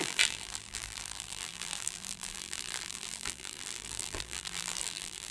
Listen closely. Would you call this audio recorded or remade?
remade